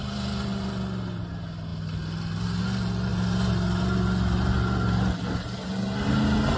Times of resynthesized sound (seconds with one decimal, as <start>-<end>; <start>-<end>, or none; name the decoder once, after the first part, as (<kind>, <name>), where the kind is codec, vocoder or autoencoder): none